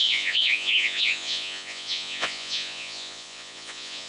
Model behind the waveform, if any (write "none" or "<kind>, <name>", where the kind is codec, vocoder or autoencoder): vocoder, Vocos